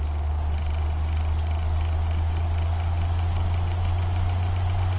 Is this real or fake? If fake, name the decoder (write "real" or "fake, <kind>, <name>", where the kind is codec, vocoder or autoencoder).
real